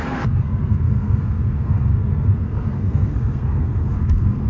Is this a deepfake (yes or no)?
yes